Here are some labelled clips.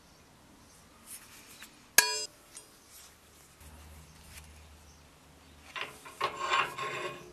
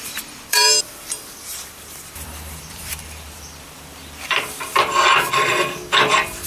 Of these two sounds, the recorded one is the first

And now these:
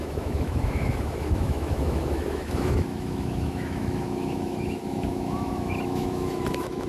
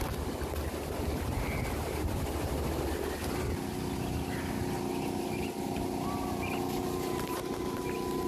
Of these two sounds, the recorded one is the second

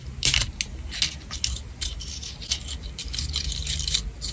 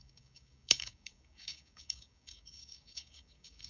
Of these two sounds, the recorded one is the first